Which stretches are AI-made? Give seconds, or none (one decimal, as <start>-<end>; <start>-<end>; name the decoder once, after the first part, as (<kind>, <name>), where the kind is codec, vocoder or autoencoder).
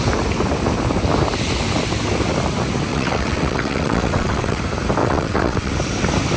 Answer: 2.9-4.6 (vocoder, WaveNeXt); 5.0-5.7